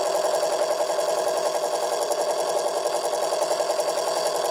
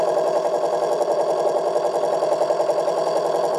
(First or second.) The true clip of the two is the first